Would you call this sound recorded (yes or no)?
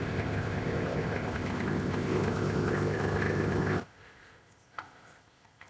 no